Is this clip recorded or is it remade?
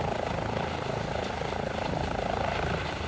recorded